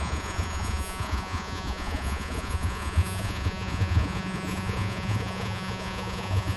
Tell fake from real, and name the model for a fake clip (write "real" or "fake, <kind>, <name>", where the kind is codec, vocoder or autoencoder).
fake, vocoder, Vocos